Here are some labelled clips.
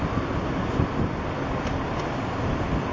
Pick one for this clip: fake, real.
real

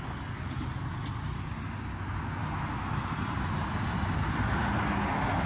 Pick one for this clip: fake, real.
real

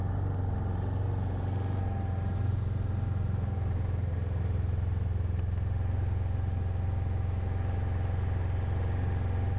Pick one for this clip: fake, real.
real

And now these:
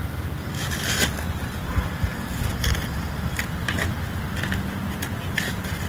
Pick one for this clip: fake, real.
real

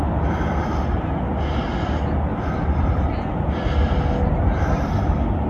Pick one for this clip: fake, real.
real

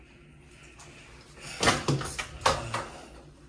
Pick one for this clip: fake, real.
real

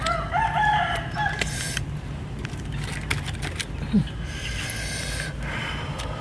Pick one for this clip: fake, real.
real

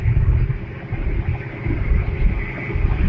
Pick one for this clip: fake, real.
real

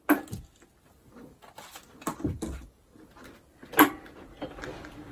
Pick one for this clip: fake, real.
real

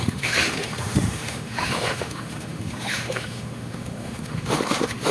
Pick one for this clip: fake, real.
fake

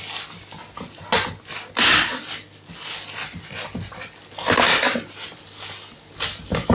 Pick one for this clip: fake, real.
real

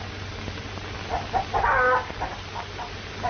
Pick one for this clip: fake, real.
real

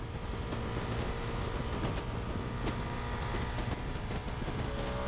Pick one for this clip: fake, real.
real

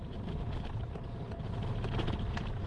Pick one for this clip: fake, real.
real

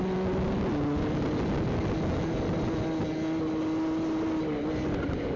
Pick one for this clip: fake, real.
real